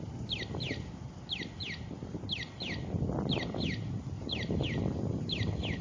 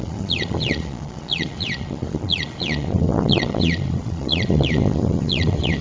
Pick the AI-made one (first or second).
second